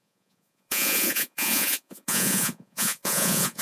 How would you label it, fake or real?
fake